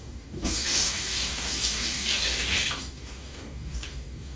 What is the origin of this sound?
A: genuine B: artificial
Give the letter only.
B